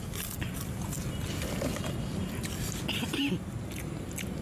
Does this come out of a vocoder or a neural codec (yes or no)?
no